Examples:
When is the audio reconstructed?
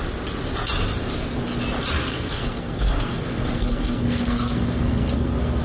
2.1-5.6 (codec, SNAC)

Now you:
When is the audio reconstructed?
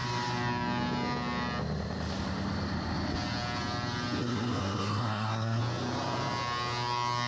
4.2-5.6 (codec, SNAC)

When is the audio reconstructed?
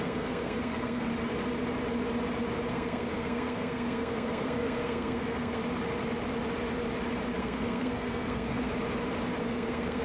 0.0-1.1 (codec, SNAC); 2.7-5.6; 7.4-8.7; 9.4-10.0